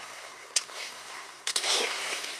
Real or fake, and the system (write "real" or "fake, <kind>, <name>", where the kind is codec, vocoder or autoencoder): fake, codec, SNAC